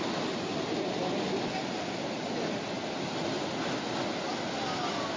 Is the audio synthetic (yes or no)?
no